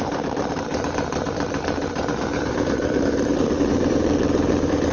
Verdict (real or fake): fake